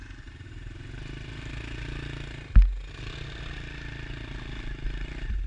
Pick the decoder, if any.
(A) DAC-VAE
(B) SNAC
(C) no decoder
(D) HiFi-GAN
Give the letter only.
C